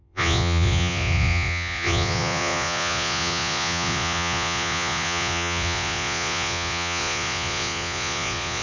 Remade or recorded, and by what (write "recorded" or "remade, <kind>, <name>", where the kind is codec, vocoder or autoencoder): remade, vocoder, Vocos